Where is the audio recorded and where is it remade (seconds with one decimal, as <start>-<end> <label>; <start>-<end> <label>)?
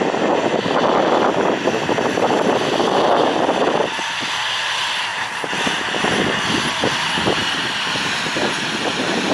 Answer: 0.0-5.1 recorded; 5.1-5.7 remade; 5.7-9.3 recorded